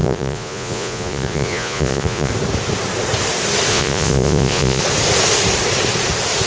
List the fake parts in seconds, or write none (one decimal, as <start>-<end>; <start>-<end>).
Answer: 0.0-2.3; 3.7-4.8